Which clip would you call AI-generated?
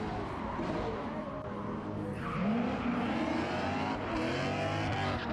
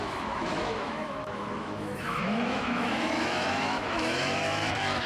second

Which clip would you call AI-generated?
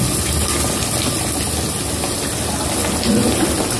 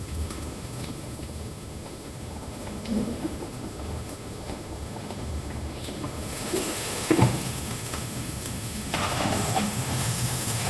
second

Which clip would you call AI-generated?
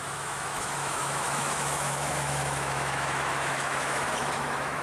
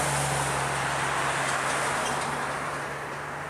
first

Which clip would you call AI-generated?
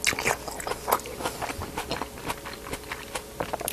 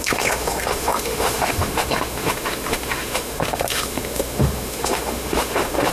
second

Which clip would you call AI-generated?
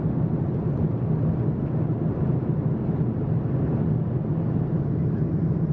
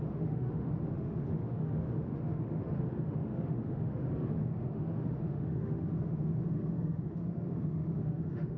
second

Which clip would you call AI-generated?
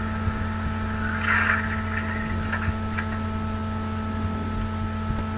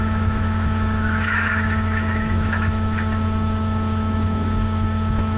second